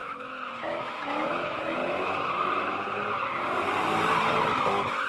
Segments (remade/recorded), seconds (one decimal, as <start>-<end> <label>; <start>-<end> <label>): 0.0-1.8 remade; 1.8-4.6 recorded; 4.6-5.1 remade